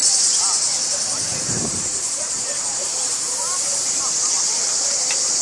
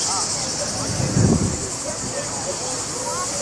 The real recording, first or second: second